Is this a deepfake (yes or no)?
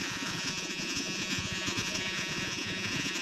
yes